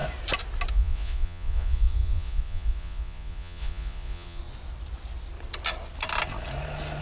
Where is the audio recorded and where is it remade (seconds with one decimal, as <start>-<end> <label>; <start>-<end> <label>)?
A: 0.0-0.7 recorded; 0.7-4.4 remade; 4.4-7.0 recorded